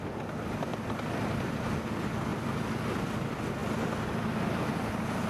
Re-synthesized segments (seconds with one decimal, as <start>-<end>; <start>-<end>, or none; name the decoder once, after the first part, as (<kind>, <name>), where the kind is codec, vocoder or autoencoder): 0.7-1.3 (vocoder, BigVGAN v2); 2.3-2.8